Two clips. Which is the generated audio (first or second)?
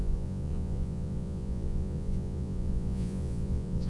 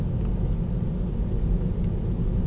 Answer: first